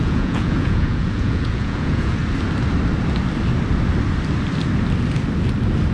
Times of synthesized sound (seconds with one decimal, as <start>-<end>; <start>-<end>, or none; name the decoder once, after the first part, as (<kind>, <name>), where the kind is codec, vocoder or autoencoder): 0.0-2.2 (vocoder, Vocos)